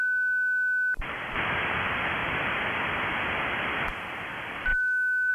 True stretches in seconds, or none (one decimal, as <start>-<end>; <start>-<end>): 0.0-5.3